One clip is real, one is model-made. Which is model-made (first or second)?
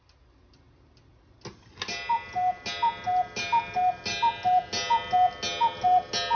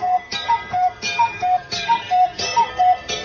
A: second